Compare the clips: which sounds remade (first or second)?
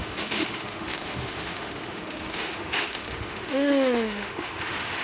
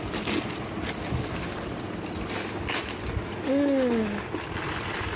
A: first